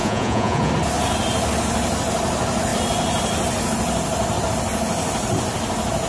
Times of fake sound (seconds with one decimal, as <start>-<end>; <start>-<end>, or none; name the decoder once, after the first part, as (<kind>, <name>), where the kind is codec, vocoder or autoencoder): 0.0-0.7 (vocoder, Vocos)